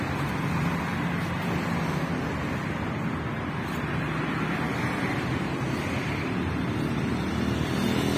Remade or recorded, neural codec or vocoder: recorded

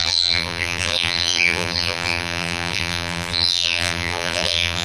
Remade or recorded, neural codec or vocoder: remade, vocoder, BigVGAN v2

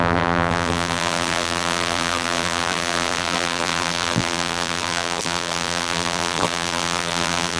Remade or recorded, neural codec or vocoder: remade, vocoder, BigVGAN v2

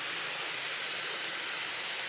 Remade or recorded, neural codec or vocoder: recorded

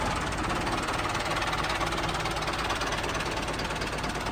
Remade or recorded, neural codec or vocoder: recorded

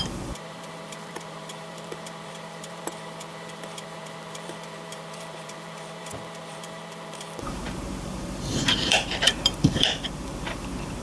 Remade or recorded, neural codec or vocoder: remade, vocoder, BigVGAN v2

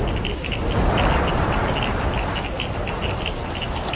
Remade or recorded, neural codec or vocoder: recorded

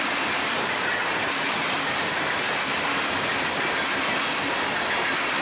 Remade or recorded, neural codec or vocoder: recorded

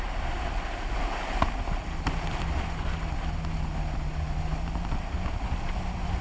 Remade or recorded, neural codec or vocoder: recorded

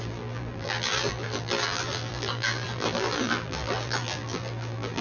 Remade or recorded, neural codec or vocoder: remade, vocoder, BigVGAN v2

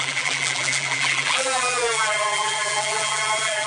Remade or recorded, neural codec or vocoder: remade, vocoder, BigVGAN v2